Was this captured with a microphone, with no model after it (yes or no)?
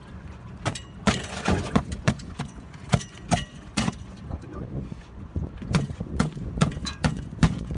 no